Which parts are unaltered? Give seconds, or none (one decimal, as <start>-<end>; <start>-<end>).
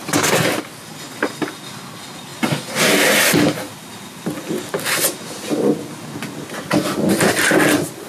0.0-8.1